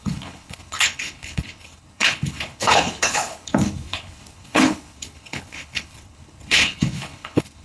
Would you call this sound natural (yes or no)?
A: no